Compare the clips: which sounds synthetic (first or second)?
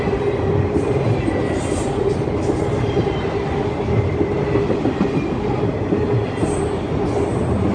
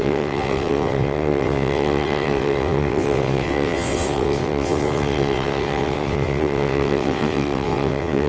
second